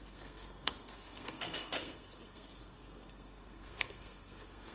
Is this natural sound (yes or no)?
no